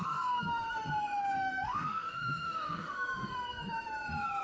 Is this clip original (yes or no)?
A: no